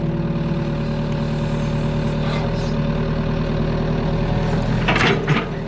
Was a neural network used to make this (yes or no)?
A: no